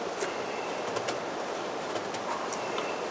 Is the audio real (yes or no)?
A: no